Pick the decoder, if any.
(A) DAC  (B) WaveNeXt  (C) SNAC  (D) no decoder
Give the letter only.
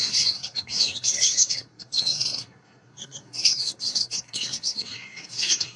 C